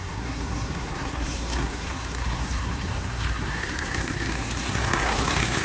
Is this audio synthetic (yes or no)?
yes